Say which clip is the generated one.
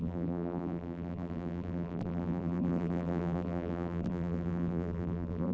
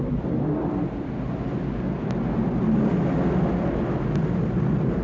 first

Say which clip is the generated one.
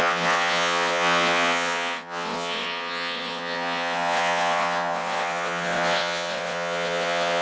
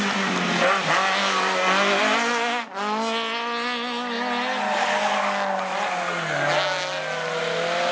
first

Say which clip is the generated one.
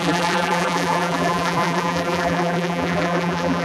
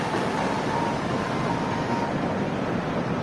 first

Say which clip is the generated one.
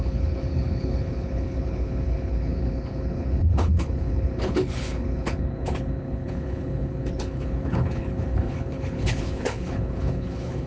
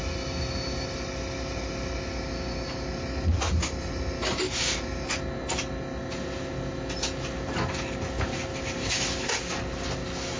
first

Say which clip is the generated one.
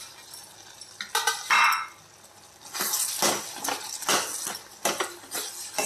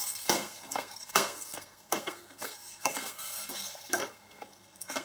second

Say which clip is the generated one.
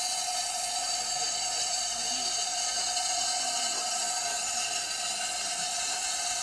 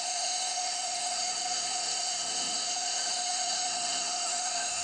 second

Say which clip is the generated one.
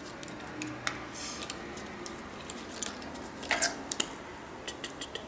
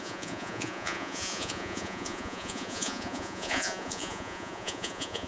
second